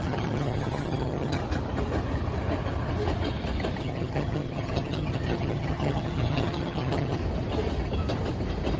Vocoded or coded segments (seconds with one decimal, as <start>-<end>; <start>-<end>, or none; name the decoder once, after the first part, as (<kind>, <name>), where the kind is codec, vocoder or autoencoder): 0.0-1.4 (vocoder, HiFi-GAN); 3.8-7.2